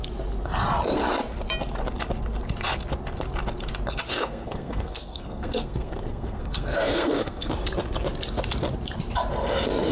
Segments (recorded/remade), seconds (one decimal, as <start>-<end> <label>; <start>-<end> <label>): 0.0-4.1 recorded; 4.1-7.5 remade; 7.5-9.9 recorded